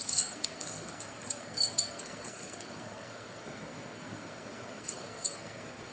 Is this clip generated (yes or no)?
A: yes